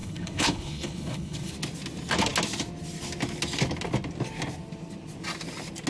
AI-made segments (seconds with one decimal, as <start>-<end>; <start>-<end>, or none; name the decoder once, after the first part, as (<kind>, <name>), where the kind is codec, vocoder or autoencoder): 0.0-1.5 (codec, HILCodec)